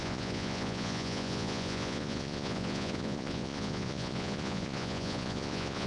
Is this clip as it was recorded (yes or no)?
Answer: no